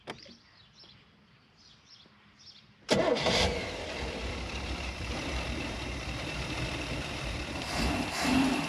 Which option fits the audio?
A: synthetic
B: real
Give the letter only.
A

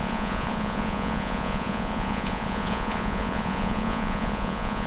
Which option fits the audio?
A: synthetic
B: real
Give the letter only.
A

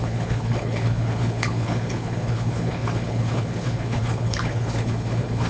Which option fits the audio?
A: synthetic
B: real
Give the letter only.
A